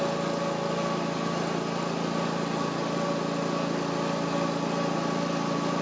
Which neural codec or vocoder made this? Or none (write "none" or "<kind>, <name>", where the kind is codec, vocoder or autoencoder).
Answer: none